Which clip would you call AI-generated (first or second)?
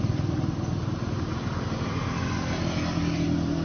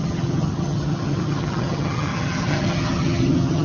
second